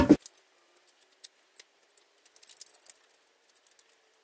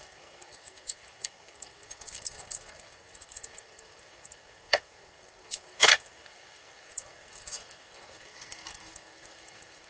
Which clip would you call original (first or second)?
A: first